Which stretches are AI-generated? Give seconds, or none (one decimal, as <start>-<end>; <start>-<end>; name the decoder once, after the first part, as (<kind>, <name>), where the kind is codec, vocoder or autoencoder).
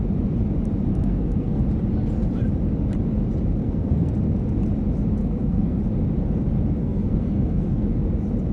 0.9-1.6 (codec, SNAC); 3.6-4.1; 5.2-5.8; 6.8-7.9